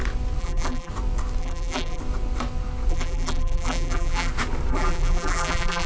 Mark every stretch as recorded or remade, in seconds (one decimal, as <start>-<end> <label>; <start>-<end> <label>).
0.0-0.4 recorded; 0.4-0.9 remade; 0.9-1.4 recorded; 1.4-2.0 remade; 2.0-2.9 recorded; 2.9-4.3 remade; 4.3-4.7 recorded; 4.7-5.9 remade